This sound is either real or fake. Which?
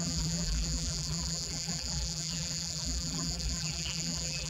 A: fake